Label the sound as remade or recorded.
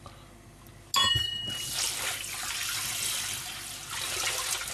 recorded